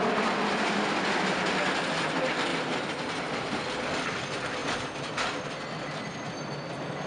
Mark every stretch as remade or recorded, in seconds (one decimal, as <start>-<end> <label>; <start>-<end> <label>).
0.0-2.5 recorded; 2.5-3.6 remade; 3.6-4.6 recorded; 4.6-5.5 remade; 5.5-7.1 recorded